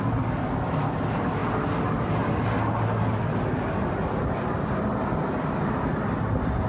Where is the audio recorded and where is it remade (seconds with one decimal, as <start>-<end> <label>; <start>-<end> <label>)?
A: 0.0-6.7 recorded